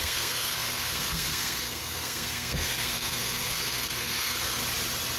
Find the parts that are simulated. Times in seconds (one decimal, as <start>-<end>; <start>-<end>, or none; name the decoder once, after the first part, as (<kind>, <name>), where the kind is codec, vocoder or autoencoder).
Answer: 0.0-4.6 (codec, SNAC)

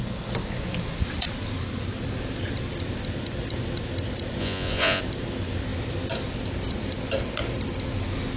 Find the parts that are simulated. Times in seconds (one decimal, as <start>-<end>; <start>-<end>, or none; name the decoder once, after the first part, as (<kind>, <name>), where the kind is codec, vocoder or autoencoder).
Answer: 4.4-5.0 (vocoder, Vocos)

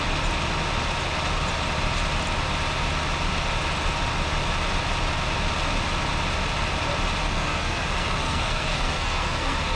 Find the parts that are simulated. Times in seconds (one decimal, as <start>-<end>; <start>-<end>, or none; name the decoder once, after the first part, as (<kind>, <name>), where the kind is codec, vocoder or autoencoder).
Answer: 7.2-9.8 (codec, SNAC)

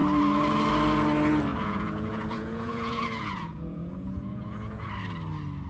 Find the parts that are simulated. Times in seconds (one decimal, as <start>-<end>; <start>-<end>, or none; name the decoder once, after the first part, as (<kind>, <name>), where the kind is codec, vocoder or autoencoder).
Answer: 1.5-4.9 (vocoder, Vocos)

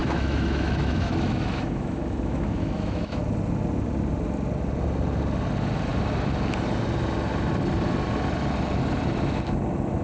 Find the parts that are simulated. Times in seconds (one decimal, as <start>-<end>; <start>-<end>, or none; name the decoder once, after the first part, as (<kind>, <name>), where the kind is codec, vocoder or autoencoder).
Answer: 0.0-3.2 (autoencoder, DAC-VAE)

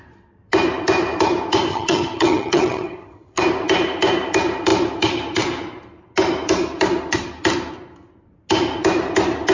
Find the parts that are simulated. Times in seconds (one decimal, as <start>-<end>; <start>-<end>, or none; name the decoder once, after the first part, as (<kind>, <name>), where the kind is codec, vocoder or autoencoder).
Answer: 1.7-3.4 (vocoder, HiFi-GAN)